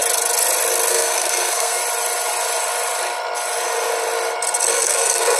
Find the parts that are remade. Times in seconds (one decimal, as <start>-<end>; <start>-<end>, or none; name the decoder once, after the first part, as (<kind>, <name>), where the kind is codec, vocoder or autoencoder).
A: 0.9-1.8 (codec, SNAC); 4.7-5.4